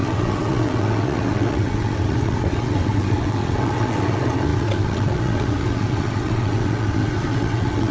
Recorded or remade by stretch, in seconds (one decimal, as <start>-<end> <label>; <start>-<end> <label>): 0.0-7.9 remade